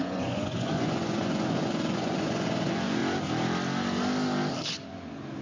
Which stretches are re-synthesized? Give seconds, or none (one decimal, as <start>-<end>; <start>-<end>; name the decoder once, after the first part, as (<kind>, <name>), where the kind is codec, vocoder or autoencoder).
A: 0.0-3.0 (vocoder, Vocos)

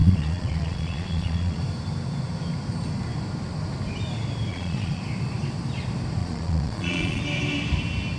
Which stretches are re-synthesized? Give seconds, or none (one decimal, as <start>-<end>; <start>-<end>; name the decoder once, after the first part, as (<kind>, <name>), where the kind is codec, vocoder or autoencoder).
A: 0.0-1.6 (vocoder, Vocos); 4.5-5.0; 6.2-7.2

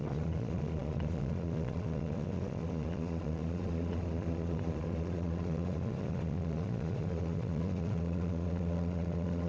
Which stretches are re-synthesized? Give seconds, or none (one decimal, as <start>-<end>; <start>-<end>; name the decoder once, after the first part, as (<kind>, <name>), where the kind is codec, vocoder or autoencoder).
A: 0.0-9.5 (vocoder, Vocos)

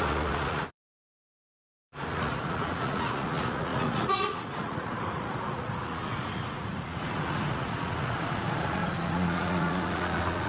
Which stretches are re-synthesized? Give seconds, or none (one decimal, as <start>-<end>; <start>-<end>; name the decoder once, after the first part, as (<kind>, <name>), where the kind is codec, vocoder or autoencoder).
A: 0.0-10.5 (vocoder, Vocos)